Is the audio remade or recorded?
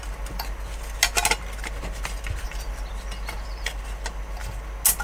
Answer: recorded